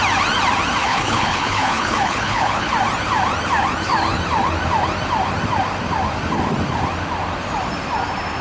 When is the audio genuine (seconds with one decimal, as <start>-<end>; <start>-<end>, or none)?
0.0-0.8; 2.7-8.4